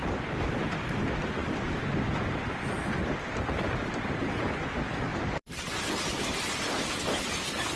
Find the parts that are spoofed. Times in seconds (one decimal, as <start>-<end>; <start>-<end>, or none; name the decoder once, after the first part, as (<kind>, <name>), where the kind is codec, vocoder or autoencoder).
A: 0.0-0.7 (vocoder, BigVGAN v2); 1.4-2.5; 5.1-7.0